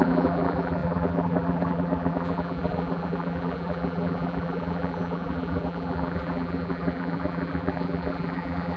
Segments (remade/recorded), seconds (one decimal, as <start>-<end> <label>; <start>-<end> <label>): 0.0-8.8 remade